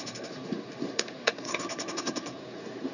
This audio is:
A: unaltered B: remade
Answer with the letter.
B